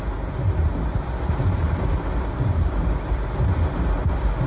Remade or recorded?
recorded